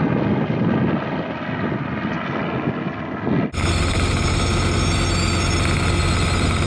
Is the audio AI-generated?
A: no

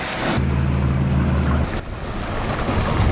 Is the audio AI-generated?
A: no